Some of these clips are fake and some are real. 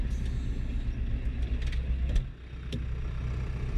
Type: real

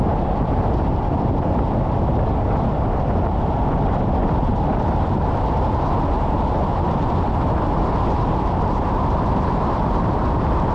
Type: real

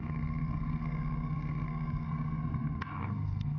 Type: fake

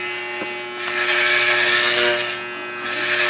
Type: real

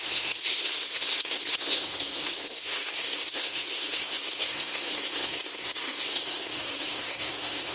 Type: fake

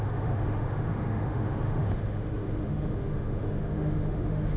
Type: fake